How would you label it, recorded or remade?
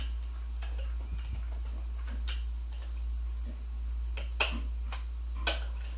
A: recorded